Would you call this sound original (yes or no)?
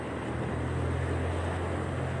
yes